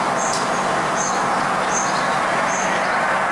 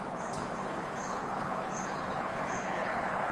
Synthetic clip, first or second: second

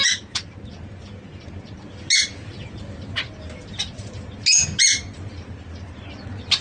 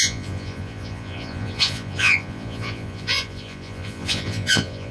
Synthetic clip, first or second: second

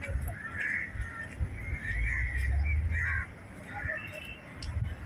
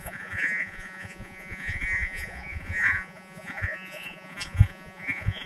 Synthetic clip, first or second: second